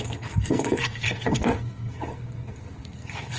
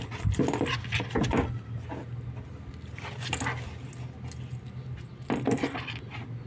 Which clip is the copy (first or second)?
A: first